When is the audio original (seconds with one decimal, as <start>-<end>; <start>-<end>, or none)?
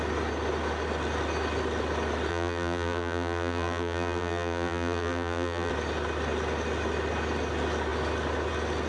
0.0-2.3; 5.7-8.9